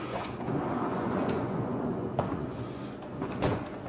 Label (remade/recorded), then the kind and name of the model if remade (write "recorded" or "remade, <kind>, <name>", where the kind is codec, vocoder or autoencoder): remade, vocoder, Vocos